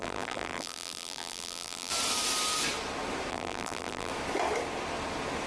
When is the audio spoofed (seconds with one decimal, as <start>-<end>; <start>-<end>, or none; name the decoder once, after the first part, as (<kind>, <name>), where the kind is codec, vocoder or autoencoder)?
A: 0.0-1.9 (vocoder, BigVGAN v2); 3.3-4.1